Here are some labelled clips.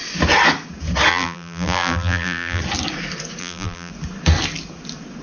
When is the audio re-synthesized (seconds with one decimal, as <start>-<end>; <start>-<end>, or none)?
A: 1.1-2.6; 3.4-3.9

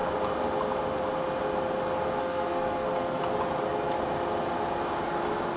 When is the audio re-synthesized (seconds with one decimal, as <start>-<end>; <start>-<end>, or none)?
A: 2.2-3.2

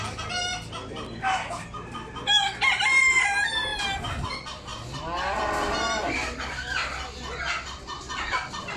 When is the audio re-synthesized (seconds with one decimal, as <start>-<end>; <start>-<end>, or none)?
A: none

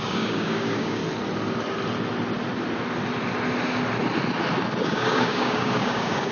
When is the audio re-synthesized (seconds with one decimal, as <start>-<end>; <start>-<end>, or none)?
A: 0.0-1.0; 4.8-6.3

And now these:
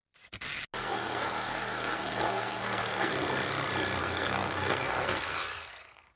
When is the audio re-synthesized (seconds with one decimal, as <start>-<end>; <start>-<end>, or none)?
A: 0.8-3.1; 4.0-6.2

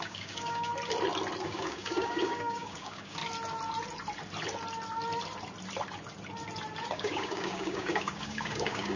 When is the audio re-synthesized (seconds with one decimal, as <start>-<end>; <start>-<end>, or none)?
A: 0.0-0.7; 1.4-3.2; 6.9-9.0